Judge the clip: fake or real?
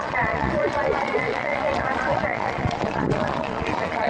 fake